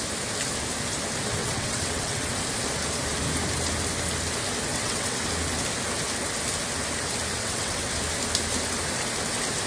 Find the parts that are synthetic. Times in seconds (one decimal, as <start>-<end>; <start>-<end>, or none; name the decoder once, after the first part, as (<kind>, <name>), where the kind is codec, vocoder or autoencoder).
1.4-2.3 (vocoder, WaveNeXt); 4.7-5.2; 7.4-7.9